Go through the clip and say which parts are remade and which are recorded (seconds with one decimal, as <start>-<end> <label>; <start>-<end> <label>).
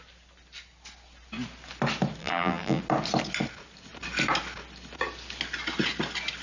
0.0-2.2 recorded; 2.2-2.8 remade; 2.8-6.4 recorded